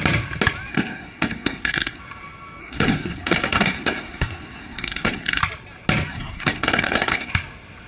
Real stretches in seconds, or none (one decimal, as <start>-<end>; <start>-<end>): 0.0-0.7; 2.0-2.6; 5.4-6.1; 7.3-7.9